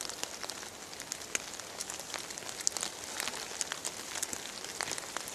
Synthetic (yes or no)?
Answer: no